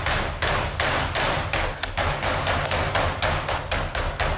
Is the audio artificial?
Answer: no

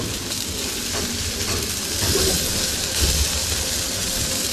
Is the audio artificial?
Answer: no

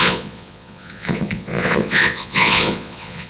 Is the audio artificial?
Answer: yes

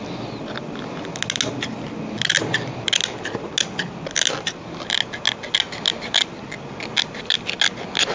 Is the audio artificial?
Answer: no